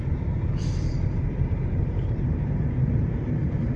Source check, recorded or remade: remade